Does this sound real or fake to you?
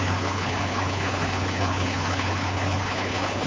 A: fake